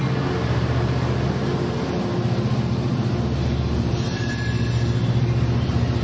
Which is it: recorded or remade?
recorded